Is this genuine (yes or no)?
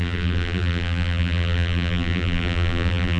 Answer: no